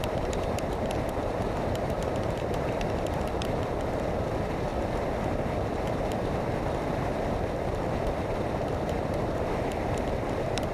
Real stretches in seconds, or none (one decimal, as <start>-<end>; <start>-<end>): 4.7-7.6